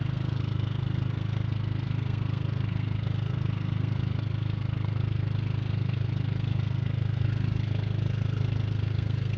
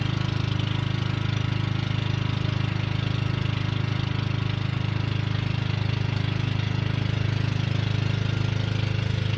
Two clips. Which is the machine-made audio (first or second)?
first